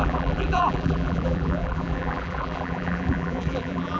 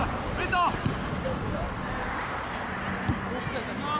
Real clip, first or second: second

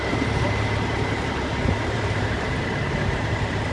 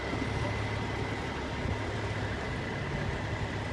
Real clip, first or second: second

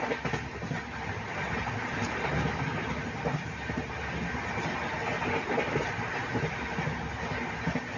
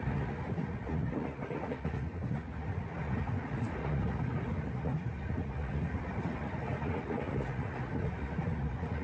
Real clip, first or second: first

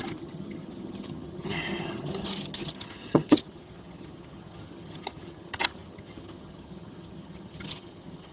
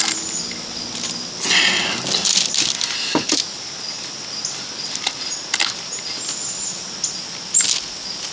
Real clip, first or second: second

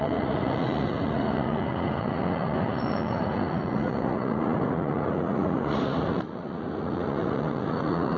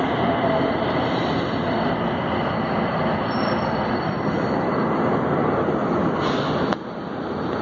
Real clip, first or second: second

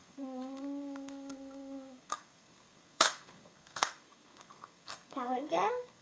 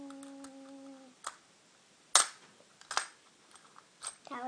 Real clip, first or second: second